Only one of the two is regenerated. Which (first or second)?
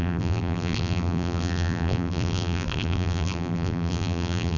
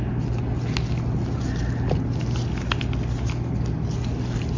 first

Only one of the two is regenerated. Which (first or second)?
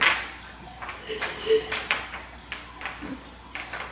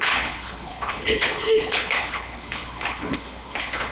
second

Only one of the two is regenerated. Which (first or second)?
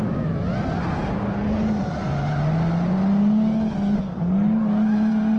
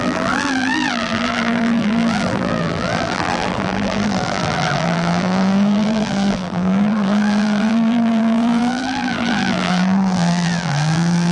second